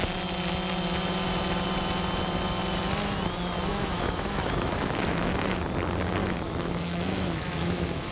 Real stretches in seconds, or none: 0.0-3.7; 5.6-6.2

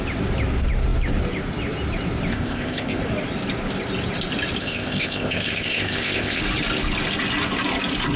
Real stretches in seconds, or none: 0.0-2.3; 3.0-4.6; 6.4-8.2